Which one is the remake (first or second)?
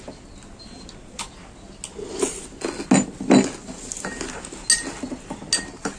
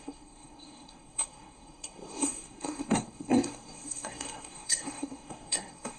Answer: second